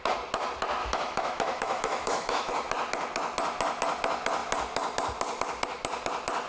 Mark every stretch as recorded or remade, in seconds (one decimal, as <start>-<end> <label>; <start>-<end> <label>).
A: 0.0-0.8 recorded; 0.8-2.5 remade; 2.5-6.5 recorded